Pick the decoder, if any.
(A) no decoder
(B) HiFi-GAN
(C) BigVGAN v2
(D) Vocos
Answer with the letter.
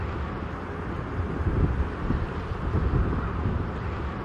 C